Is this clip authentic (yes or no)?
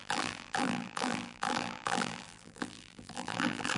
no